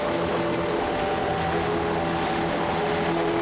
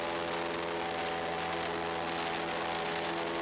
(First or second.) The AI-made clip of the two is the first